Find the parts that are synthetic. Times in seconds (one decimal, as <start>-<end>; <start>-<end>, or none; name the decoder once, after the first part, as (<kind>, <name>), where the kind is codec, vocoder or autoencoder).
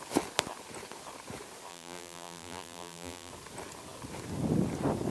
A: 1.7-3.3 (vocoder, BigVGAN v2)